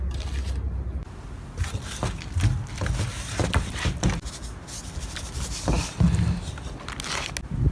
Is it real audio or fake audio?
real